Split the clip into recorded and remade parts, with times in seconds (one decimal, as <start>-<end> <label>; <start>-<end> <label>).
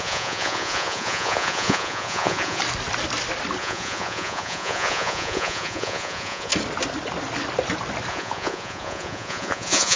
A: 0.0-2.6 remade; 2.6-3.6 recorded; 3.6-6.5 remade; 6.5-8.1 recorded; 8.1-10.0 remade